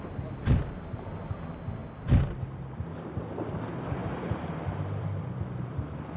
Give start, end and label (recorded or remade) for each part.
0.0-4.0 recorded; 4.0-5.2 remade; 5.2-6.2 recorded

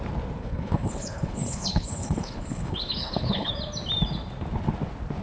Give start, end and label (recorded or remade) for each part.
0.0-0.4 recorded; 0.4-3.5 remade; 3.5-5.2 recorded

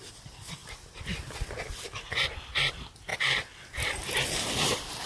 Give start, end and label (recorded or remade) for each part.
0.0-5.1 recorded